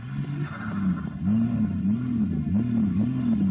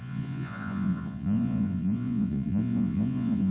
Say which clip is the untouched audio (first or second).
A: first